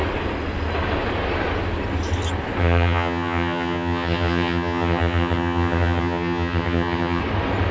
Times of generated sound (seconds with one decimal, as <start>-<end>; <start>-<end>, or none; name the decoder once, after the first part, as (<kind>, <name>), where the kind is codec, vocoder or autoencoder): 2.6-7.2 (vocoder, HiFi-GAN)